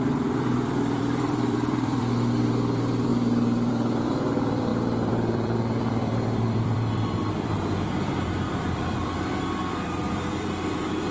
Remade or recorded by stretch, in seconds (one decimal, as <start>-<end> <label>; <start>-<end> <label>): 0.0-3.1 remade; 3.1-3.7 recorded; 3.7-11.1 remade